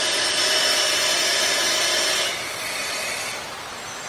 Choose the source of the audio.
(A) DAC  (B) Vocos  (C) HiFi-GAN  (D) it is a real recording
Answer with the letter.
D